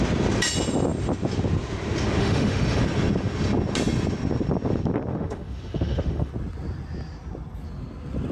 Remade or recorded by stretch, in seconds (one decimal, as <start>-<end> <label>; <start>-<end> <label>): 0.0-2.2 recorded; 2.2-2.8 remade; 2.8-5.1 recorded; 5.1-6.3 remade; 6.3-8.3 recorded